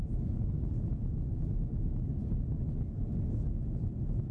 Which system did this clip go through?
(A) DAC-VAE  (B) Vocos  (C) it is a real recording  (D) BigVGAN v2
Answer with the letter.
C